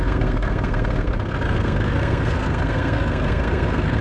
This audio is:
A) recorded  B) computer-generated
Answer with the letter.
B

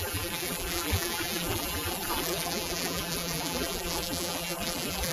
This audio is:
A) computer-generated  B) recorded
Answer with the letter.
A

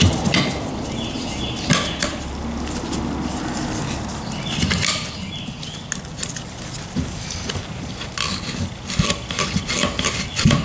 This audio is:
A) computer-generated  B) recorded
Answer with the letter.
B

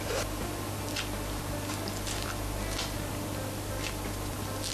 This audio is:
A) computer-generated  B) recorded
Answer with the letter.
B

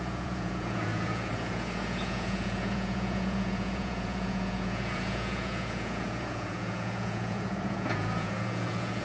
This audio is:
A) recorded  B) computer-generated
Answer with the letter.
B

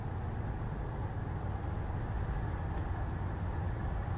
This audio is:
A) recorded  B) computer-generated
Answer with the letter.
A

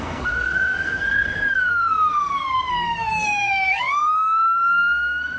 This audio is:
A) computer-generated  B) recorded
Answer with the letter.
A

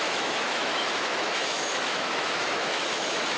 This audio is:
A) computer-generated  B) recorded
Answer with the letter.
A